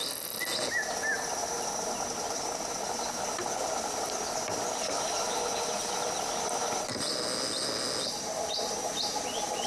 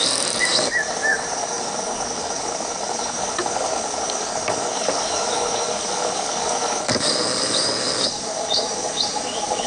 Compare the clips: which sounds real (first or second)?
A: first